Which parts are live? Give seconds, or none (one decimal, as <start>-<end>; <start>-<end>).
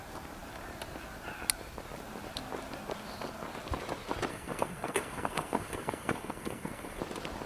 0.0-4.3; 7.0-7.5